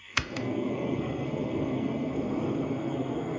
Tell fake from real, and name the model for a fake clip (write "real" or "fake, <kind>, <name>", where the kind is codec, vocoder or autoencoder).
fake, codec, SNAC